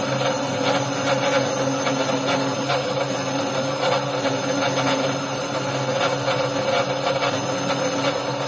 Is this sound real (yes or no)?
yes